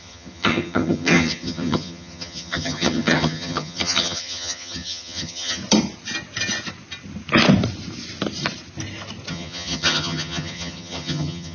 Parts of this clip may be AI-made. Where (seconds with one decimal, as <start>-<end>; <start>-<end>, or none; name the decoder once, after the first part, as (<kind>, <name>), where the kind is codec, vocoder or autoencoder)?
0.0-5.6 (vocoder, HiFi-GAN); 9.3-11.5